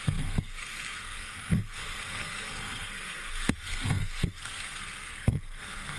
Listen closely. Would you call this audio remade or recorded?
remade